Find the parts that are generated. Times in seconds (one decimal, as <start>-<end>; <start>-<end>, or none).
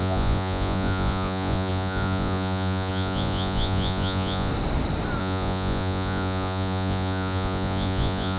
0.0-4.5; 5.2-8.4